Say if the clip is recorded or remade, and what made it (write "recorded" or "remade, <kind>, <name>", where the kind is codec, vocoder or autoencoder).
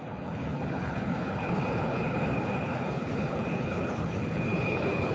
remade, codec, HILCodec